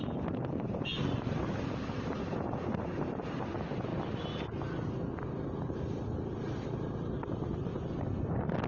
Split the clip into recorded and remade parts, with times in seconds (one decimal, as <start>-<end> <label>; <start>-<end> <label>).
0.0-0.9 remade; 0.9-1.4 recorded; 1.4-3.9 remade; 3.9-5.6 recorded; 5.6-7.7 remade; 7.7-8.7 recorded